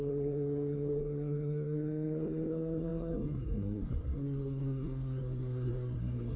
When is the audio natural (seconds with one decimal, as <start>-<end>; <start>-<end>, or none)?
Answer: none